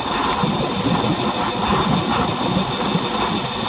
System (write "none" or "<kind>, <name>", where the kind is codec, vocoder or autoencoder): none